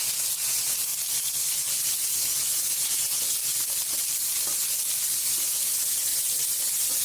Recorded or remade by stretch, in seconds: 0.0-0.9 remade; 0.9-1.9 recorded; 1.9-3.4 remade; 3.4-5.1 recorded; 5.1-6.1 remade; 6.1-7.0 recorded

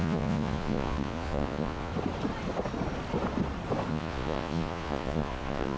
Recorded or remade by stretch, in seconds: 0.0-1.9 remade; 1.9-3.9 recorded; 3.9-5.8 remade

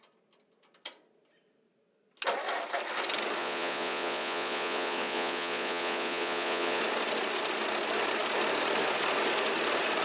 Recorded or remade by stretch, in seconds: 0.0-3.4 recorded; 3.4-6.8 remade; 6.8-10.0 recorded

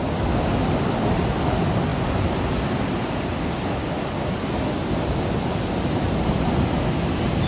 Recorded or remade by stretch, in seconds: 0.0-7.5 recorded

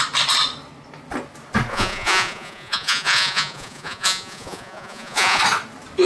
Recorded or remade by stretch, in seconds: 0.0-1.7 recorded; 1.7-5.4 remade; 5.4-6.1 recorded